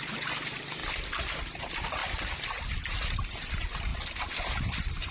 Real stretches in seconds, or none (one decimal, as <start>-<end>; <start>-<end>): 0.0-0.8; 1.6-5.1